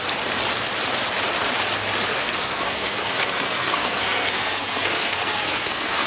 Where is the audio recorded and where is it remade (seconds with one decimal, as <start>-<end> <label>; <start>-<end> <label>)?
0.0-2.1 recorded; 2.1-6.1 remade